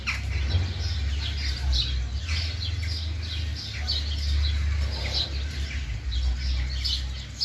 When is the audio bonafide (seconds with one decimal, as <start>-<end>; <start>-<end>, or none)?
0.0-7.4